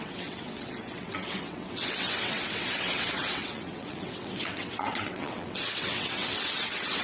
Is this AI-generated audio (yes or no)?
yes